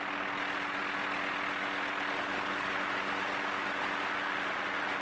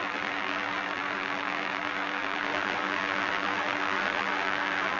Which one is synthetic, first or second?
second